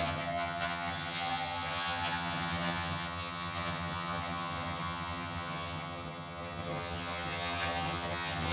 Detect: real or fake fake